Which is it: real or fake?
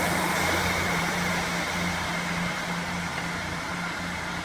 fake